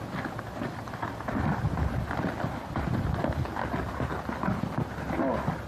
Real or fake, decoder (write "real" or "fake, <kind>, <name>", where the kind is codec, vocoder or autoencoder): real